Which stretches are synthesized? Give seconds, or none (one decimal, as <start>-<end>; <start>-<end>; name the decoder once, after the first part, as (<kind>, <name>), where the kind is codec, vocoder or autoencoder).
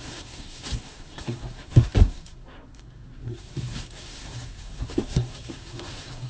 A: 0.0-6.3 (codec, SNAC)